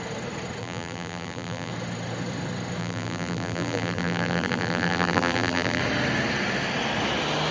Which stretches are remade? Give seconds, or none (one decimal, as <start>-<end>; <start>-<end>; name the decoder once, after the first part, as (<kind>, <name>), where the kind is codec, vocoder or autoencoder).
0.6-1.7 (vocoder, BigVGAN v2); 2.8-5.8